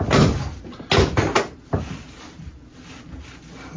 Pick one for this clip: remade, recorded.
recorded